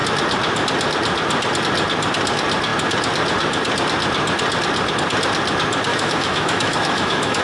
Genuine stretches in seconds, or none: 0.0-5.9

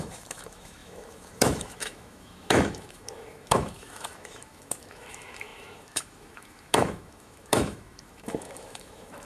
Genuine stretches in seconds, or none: none

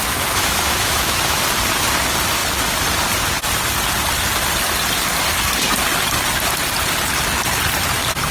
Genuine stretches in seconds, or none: 1.4-8.3